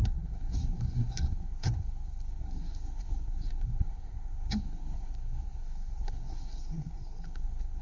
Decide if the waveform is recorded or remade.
remade